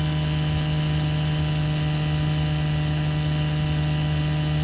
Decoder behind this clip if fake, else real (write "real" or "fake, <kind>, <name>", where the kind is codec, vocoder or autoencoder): real